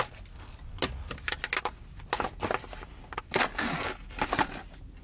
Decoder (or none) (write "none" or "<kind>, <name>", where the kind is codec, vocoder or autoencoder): none